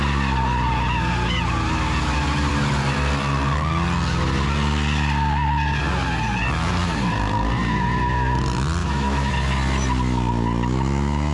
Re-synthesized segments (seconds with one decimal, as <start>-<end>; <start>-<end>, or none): 8.8-9.3